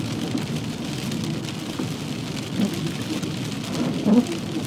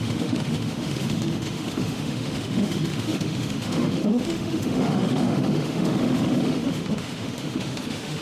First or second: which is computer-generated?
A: second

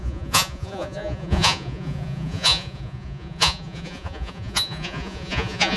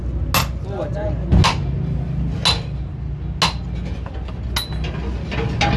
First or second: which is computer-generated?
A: first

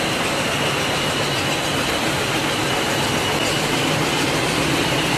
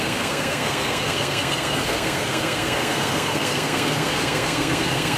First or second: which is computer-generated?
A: second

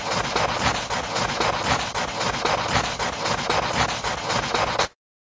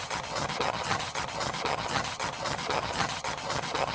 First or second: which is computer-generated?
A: second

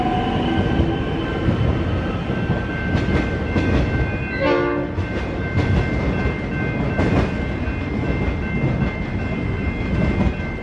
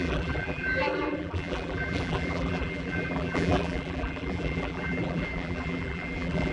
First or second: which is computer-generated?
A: second